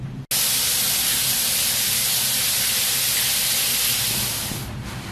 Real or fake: real